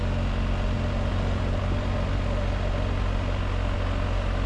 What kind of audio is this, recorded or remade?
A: recorded